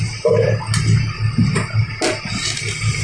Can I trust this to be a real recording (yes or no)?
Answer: yes